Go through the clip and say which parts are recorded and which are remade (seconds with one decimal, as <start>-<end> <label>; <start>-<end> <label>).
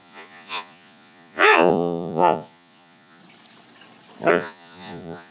0.0-3.2 remade; 3.2-4.3 recorded; 4.3-5.3 remade